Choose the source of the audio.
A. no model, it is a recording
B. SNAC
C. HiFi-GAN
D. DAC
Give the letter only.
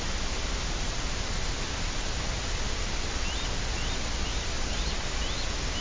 A